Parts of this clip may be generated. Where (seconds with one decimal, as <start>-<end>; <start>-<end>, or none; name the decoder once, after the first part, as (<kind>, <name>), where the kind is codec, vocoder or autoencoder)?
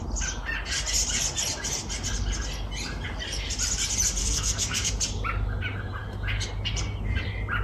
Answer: 4.2-4.9 (codec, SNAC)